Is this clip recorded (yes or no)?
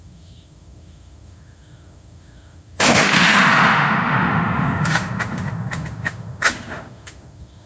no